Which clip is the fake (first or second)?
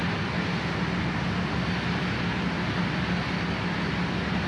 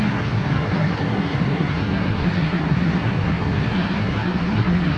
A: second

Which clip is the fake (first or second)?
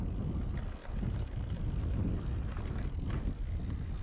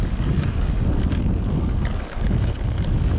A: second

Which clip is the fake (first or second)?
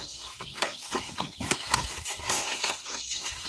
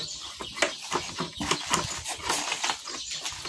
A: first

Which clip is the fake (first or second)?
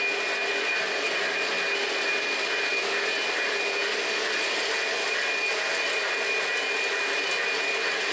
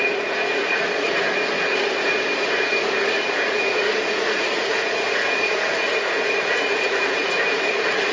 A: second